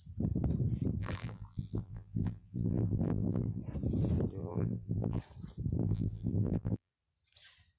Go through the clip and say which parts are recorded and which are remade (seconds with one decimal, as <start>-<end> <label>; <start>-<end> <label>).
0.0-1.0 recorded; 1.0-3.6 remade; 3.6-4.4 recorded; 4.4-5.2 remade; 5.2-5.8 recorded; 5.8-6.9 remade; 6.9-7.8 recorded